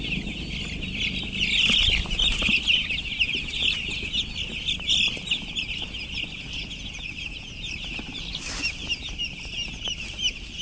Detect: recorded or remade recorded